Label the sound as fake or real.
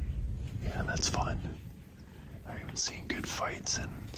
real